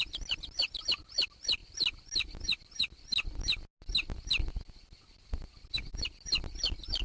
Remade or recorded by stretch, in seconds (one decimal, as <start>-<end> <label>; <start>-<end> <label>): 0.0-7.0 recorded